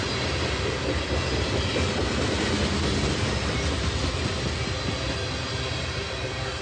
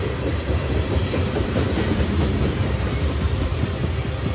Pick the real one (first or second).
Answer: first